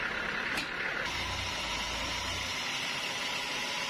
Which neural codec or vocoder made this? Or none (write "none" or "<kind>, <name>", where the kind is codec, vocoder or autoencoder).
none